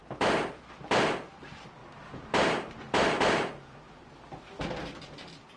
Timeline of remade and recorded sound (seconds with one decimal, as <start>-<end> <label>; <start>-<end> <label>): 0.0-1.8 recorded; 1.8-4.1 remade; 4.1-5.6 recorded